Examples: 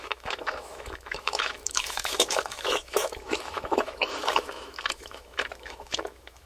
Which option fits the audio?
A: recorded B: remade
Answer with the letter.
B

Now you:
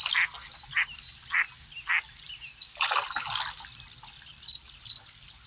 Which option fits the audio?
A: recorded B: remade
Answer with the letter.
A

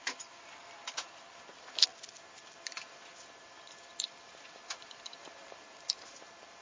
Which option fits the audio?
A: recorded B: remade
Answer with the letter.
A